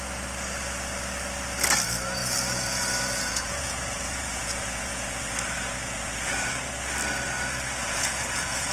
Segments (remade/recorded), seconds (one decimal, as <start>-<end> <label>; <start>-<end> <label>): 0.0-2.2 recorded; 2.2-6.5 remade; 6.5-7.8 recorded; 7.8-8.7 remade